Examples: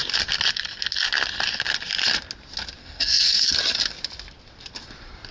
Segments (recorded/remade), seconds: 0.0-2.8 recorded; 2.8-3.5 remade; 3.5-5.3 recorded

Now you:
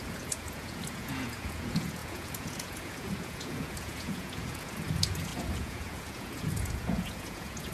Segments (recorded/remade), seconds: 0.0-7.7 remade